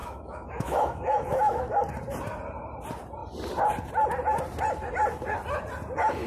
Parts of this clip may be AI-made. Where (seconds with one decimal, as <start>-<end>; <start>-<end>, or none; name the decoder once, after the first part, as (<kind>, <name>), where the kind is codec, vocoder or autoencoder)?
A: 0.0-1.8 (autoencoder, DAC-VAE)